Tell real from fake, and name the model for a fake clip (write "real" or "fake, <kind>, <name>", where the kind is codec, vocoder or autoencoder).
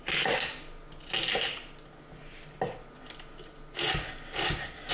real